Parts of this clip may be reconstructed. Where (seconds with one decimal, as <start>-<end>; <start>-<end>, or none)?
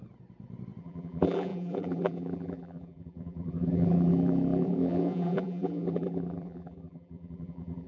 0.8-7.9